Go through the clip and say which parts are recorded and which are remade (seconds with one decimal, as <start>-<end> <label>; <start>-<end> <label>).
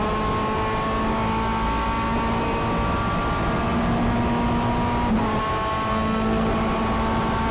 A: 0.0-5.9 recorded; 5.9-6.5 remade; 6.5-7.5 recorded